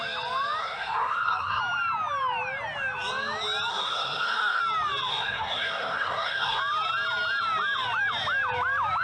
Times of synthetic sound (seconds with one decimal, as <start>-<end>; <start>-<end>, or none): 0.6-1.6; 3.7-4.6; 5.1-6.6